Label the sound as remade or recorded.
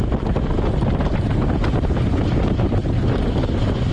recorded